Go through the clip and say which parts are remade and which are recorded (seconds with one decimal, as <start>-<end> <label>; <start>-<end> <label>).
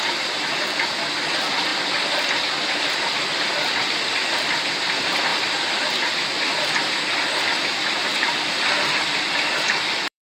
0.0-1.7 remade; 1.7-2.7 recorded; 2.7-5.3 remade; 5.3-7.4 recorded; 7.4-10.3 remade